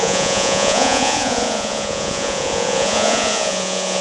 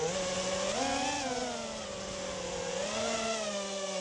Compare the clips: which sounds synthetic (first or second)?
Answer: first